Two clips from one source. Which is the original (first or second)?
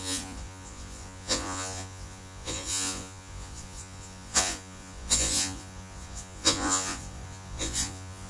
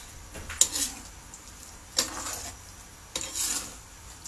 second